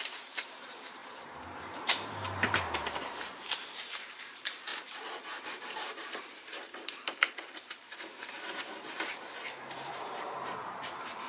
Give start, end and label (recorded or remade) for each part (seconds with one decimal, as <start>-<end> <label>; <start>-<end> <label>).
0.0-11.3 remade

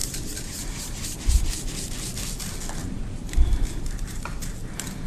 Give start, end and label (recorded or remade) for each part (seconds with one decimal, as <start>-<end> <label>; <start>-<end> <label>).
0.0-1.5 remade; 1.5-2.8 recorded; 2.8-4.5 remade; 4.5-5.1 recorded

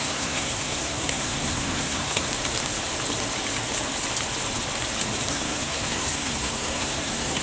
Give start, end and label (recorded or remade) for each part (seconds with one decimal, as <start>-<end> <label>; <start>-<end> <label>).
0.0-2.3 remade; 2.3-5.3 recorded; 5.3-7.4 remade

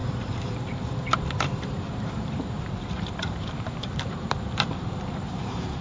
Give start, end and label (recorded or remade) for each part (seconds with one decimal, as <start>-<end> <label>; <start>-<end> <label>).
0.0-5.8 remade

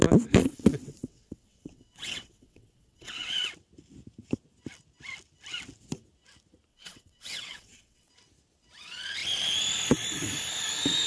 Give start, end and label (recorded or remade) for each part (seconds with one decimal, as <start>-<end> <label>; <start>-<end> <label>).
0.0-0.4 recorded; 0.4-3.5 remade; 3.5-6.7 recorded; 6.7-8.1 remade; 8.1-11.1 recorded